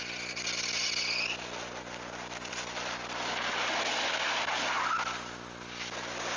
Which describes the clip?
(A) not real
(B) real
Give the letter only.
B